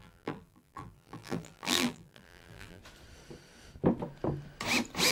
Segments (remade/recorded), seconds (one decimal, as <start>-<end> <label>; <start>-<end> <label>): 0.0-2.8 remade; 2.8-5.1 recorded